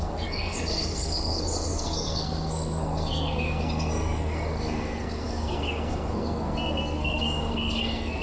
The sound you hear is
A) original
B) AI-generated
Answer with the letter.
B